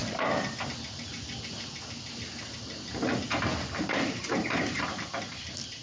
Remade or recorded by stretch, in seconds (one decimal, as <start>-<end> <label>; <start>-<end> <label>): 0.0-5.8 recorded